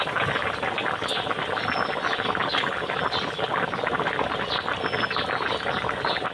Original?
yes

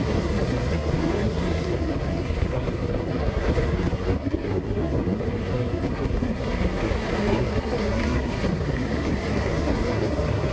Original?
no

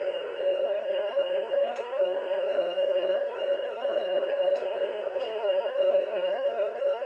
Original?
no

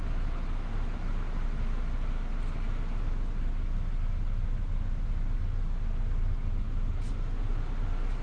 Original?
yes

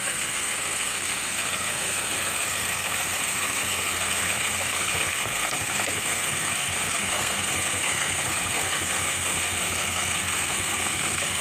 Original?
no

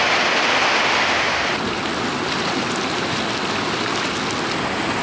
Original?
yes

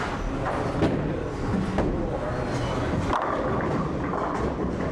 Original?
yes